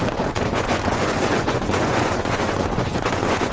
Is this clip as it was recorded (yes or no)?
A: no